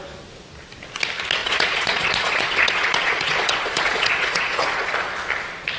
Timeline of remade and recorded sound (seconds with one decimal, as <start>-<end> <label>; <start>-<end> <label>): 0.0-1.4 recorded; 1.4-4.9 remade; 4.9-5.8 recorded